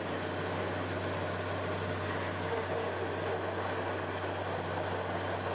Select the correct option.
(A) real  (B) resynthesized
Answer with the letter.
A